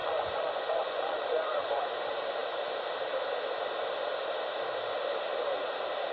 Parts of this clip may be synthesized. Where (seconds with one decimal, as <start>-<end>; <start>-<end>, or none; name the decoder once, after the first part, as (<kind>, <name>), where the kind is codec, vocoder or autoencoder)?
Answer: 0.0-1.8 (vocoder, Vocos)